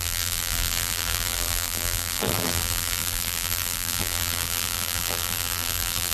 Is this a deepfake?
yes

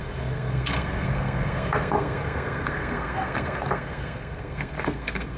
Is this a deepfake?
yes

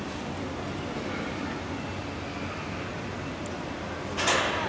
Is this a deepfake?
no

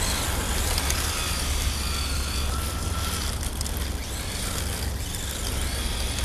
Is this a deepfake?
no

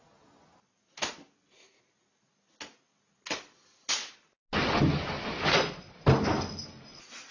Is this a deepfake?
no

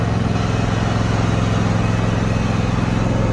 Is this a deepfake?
no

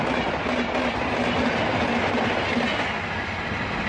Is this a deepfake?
no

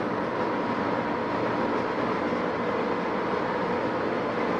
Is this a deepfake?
no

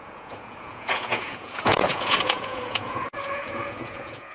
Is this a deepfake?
yes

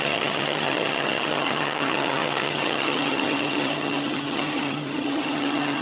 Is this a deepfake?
yes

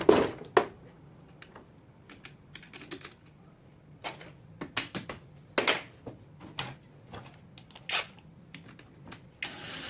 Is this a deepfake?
no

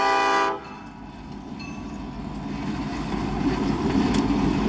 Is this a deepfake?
no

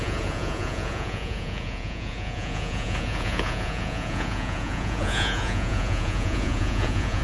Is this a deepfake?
yes